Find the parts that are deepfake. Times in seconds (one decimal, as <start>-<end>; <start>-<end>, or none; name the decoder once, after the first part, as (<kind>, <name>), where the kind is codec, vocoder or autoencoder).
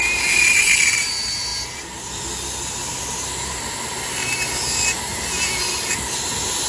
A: none